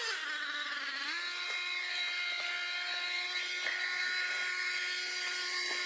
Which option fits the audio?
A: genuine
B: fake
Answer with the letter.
A